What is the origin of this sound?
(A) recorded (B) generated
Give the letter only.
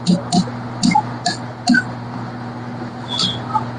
A